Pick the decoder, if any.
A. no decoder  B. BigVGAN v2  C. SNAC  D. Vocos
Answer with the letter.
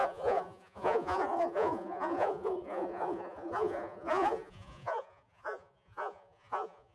D